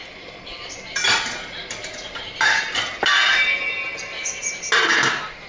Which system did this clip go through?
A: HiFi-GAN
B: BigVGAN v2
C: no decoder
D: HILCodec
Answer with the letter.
B